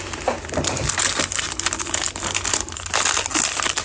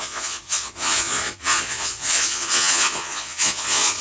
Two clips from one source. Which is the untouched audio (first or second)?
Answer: first